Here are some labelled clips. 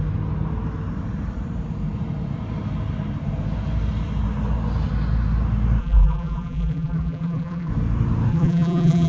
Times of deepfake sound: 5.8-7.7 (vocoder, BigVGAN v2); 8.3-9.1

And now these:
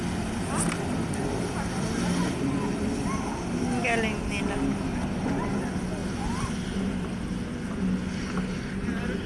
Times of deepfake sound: none

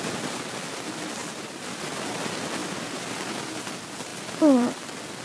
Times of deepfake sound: 1.2-2.0 (vocoder, BigVGAN v2); 2.6-3.6; 4.1-4.7

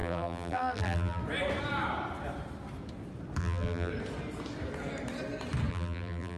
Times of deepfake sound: 0.0-1.2 (vocoder, BigVGAN v2); 3.4-3.9; 5.7-6.4

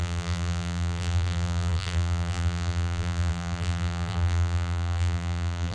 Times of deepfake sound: 0.0-5.7 (vocoder, BigVGAN v2)

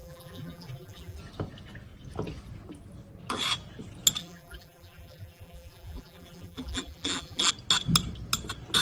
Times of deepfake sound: 0.0-1.2 (vocoder, BigVGAN v2); 4.2-7.5

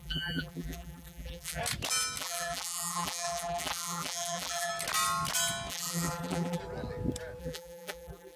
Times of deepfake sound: 0.0-1.6 (vocoder, BigVGAN v2); 2.2-4.7; 5.7-6.6; 7.4-8.4

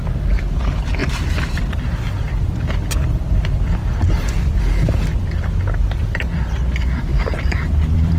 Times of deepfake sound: 1.0-4.8 (vocoder, BigVGAN v2); 7.1-8.2